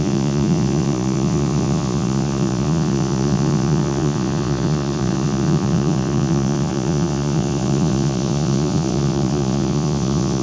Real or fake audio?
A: fake